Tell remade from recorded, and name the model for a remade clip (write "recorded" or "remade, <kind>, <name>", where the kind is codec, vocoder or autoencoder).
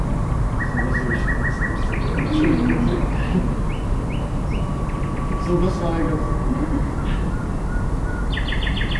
recorded